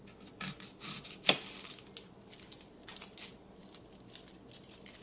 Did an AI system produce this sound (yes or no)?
no